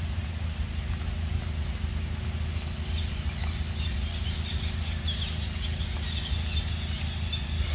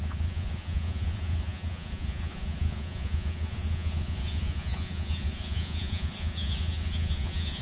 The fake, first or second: second